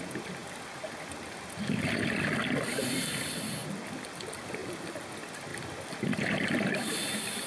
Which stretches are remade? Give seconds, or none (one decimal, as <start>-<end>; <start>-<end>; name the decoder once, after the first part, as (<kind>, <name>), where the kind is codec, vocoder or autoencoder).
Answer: 4.6-5.1 (vocoder, BigVGAN v2)